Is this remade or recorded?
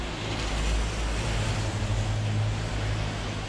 recorded